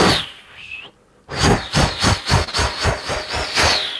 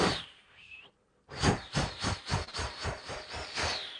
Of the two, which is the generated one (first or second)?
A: second